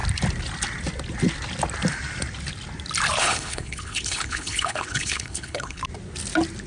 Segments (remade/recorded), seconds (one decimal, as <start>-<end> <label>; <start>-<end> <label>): 0.0-3.2 recorded; 3.2-5.8 remade; 5.8-6.7 recorded